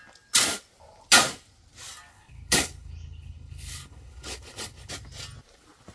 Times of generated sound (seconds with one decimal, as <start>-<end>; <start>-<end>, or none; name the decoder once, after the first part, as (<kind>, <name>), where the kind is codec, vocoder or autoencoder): 2.1-4.9 (codec, HILCodec)